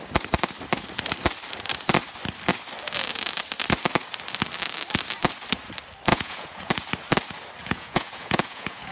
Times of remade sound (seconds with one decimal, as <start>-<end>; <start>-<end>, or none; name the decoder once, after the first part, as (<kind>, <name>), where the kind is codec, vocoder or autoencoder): 6.1-6.7 (vocoder, Vocos); 7.6-8.9